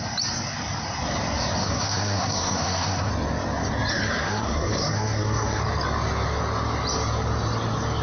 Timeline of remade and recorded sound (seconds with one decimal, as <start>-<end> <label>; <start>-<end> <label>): 0.0-1.6 recorded; 1.6-3.1 remade; 3.1-3.9 recorded; 3.9-5.6 remade; 5.6-8.0 recorded